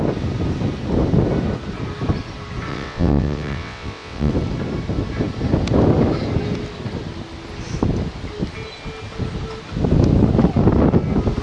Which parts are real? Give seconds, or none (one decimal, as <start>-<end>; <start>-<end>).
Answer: 0.0-2.7; 4.3-11.4